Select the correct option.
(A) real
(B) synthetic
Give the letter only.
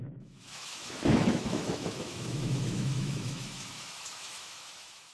B